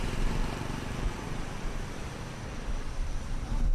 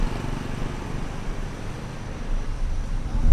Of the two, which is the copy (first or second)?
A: first